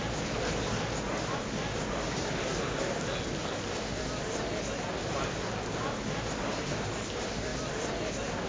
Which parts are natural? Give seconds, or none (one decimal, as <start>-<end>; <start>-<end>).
0.0-1.7; 2.3-8.5